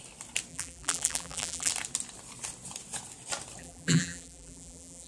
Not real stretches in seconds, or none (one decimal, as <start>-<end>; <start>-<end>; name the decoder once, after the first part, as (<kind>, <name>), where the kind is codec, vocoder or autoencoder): 0.5-1.7 (vocoder, BigVGAN v2); 3.6-5.1